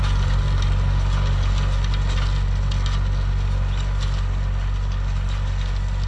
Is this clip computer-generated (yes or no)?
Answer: no